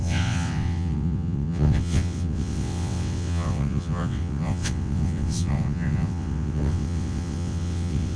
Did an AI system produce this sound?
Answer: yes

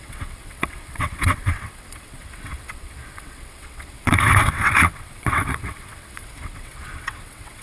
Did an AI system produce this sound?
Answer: yes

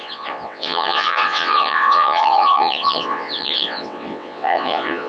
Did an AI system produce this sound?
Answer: yes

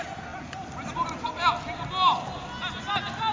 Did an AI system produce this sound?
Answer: no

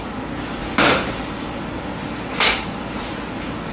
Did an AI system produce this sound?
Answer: no